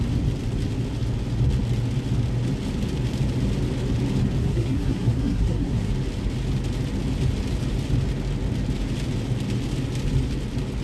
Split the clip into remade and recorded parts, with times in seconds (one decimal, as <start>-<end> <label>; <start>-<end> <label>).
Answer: 0.0-4.4 recorded; 4.4-5.9 remade; 5.9-10.8 recorded